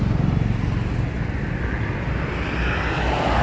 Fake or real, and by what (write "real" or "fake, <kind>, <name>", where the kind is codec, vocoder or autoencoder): real